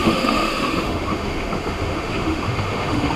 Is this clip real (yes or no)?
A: no